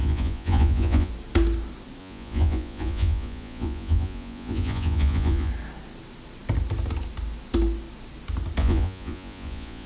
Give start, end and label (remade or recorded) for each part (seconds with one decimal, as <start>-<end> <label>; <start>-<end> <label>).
0.0-1.1 remade; 1.1-2.0 recorded; 2.0-5.5 remade; 5.5-8.6 recorded; 8.6-9.9 remade